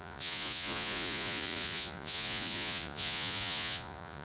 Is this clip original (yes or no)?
no